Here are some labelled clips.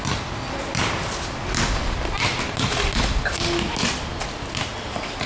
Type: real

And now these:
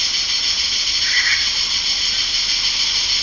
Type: real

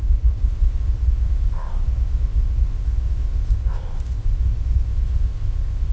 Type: fake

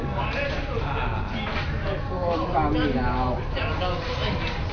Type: real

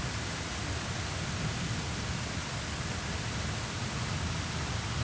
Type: real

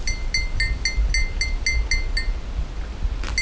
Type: real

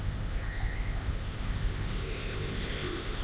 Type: fake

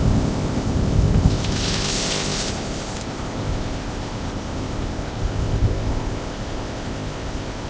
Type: fake